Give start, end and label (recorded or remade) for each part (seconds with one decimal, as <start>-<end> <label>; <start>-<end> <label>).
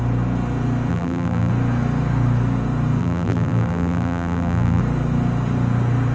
0.0-0.9 recorded; 0.9-1.5 remade; 1.5-3.0 recorded; 3.0-4.8 remade; 4.8-6.1 recorded